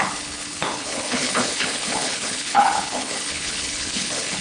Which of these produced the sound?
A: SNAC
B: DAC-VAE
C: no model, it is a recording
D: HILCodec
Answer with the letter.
D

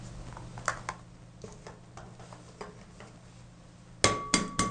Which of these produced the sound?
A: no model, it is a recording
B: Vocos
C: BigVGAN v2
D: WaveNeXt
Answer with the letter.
A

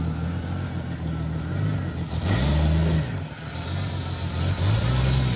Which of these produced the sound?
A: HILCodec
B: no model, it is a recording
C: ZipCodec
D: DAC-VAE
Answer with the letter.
B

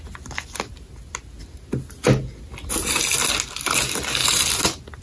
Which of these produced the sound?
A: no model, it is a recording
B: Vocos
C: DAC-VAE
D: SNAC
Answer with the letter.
A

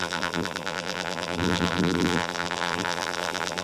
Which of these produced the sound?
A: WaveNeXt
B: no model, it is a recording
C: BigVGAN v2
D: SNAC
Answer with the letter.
C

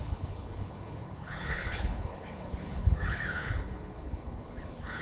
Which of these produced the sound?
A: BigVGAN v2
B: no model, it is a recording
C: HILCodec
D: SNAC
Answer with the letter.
C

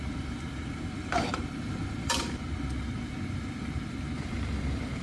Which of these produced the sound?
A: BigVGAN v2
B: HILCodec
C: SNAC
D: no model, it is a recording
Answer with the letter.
A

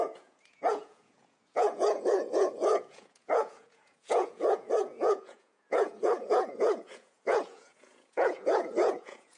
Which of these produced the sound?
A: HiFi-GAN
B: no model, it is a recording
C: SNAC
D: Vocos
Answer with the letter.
D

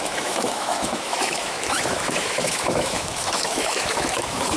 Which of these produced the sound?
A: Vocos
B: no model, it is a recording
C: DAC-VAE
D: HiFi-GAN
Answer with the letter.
C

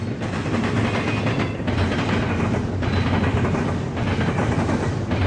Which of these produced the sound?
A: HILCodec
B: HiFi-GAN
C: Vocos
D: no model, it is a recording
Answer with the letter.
D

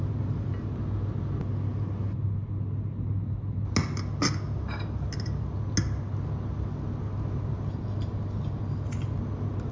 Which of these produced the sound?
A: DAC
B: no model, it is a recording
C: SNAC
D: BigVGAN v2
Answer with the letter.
B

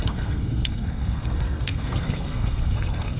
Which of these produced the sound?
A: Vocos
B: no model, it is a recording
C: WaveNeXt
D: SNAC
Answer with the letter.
D